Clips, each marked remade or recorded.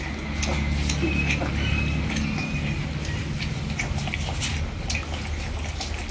recorded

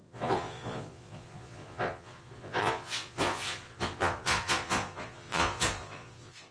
remade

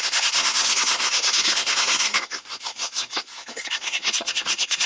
remade